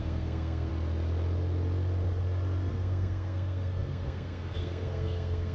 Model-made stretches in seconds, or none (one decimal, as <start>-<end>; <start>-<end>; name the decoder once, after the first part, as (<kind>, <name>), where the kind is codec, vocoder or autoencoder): 0.0-0.7 (codec, SNAC); 2.7-5.5